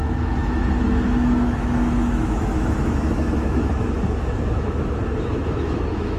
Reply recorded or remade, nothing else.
remade